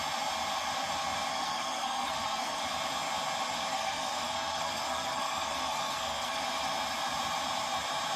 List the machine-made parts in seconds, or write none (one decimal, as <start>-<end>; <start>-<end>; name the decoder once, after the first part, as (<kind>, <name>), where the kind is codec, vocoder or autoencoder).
1.3-2.6 (codec, SNAC); 3.7-6.4